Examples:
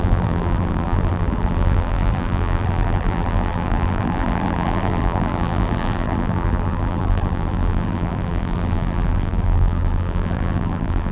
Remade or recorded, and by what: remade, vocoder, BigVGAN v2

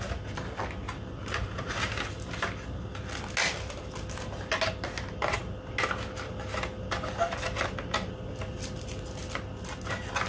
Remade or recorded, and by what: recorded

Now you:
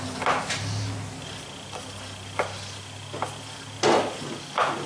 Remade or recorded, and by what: recorded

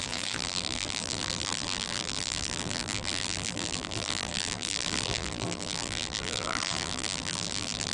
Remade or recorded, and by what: remade, vocoder, BigVGAN v2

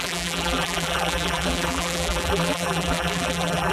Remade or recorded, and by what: remade, vocoder, BigVGAN v2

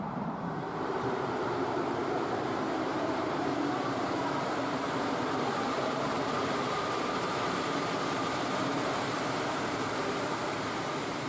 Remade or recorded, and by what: remade, vocoder, BigVGAN v2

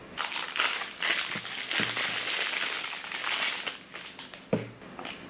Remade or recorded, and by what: recorded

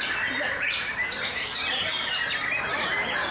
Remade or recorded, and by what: remade, vocoder, BigVGAN v2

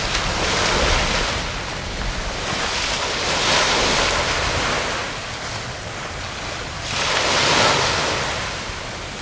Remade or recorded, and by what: recorded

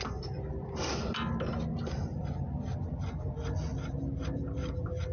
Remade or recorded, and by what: recorded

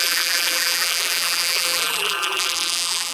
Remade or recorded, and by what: remade, vocoder, BigVGAN v2